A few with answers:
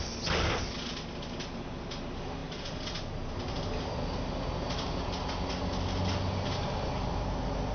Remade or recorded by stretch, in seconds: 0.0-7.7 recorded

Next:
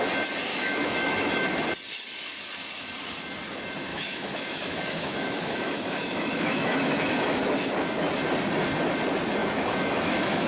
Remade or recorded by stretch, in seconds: 0.0-0.5 recorded; 0.5-1.6 remade; 1.6-3.9 recorded; 3.9-7.4 remade; 7.4-9.4 recorded; 9.4-10.5 remade

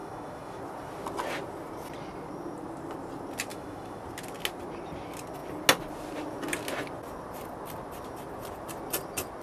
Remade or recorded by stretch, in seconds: 0.0-0.6 remade; 0.6-3.5 recorded; 3.5-4.0 remade; 4.0-9.4 recorded

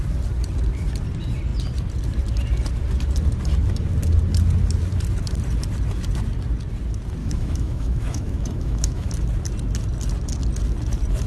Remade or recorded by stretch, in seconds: 0.0-7.2 recorded; 7.2-9.1 remade; 9.1-11.3 recorded

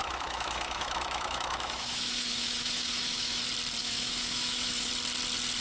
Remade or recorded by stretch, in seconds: 0.0-3.4 remade; 3.4-3.8 recorded; 3.8-4.9 remade; 4.9-5.6 recorded

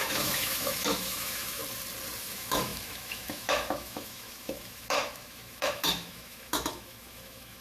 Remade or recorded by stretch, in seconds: 0.0-1.6 remade; 1.6-2.2 recorded; 2.2-7.6 remade